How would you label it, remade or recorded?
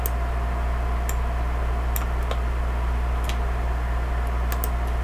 recorded